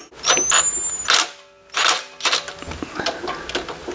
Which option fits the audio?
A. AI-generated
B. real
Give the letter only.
B